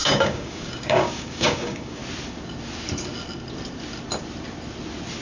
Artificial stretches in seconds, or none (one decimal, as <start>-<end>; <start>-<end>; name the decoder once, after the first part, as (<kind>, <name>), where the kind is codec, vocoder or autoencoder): 0.0-2.0 (codec, DAC)